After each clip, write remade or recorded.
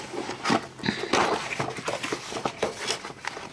recorded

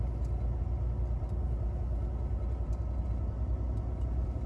recorded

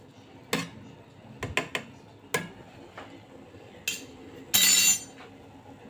recorded